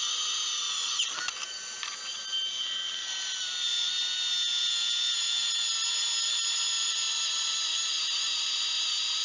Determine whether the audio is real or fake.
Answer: real